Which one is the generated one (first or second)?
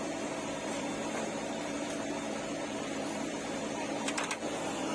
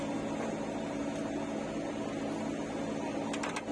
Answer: first